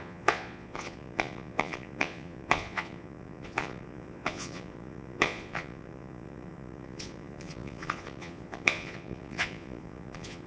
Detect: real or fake fake